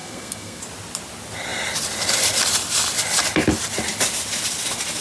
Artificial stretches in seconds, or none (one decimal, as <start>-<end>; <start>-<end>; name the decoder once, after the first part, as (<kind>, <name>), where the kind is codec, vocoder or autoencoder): 0.0-0.6 (codec, SNAC)